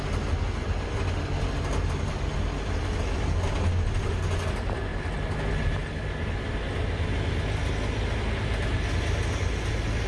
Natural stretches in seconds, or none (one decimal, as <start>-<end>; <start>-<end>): 0.0-10.1